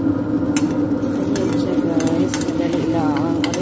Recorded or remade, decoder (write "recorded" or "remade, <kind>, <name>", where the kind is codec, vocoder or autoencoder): recorded